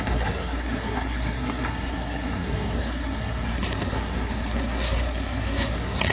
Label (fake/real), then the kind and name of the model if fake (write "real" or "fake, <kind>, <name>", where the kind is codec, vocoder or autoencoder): fake, codec, SNAC